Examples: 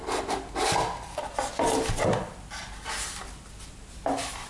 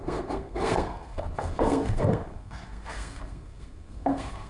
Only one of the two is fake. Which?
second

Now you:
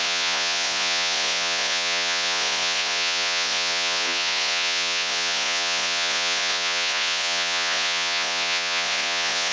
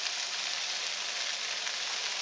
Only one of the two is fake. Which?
first